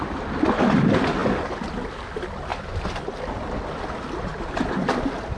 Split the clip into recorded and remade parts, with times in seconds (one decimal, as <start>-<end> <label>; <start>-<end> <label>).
0.0-1.2 recorded; 1.2-2.1 remade; 2.1-2.5 recorded; 2.5-3.5 remade; 3.5-4.3 recorded; 4.3-4.9 remade; 4.9-5.4 recorded